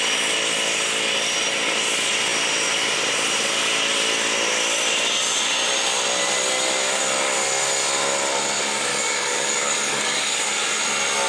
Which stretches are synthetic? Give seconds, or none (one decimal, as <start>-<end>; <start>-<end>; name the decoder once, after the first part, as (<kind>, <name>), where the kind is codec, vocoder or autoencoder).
8.9-10.4 (codec, DAC)